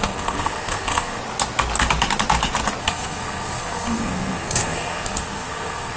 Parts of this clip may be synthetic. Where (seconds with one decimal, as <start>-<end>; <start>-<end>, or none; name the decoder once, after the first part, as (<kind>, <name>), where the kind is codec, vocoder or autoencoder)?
0.0-1.2 (codec, SNAC); 2.8-6.0